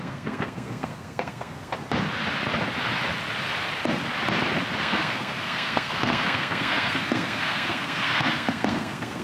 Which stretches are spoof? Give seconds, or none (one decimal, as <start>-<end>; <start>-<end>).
0.0-1.7; 4.8-9.2